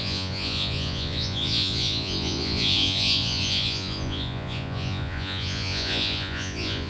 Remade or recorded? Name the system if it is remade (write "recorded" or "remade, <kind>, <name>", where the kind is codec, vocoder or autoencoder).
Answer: remade, vocoder, Vocos